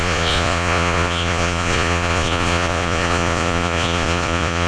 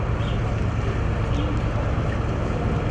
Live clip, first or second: second